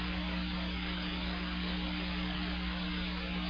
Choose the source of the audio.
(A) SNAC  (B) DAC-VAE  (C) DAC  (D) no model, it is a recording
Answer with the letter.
C